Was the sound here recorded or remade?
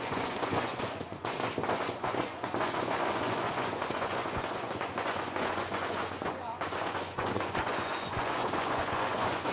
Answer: remade